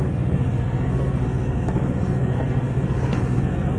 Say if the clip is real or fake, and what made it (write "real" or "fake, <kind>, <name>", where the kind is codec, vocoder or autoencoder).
fake, codec, SNAC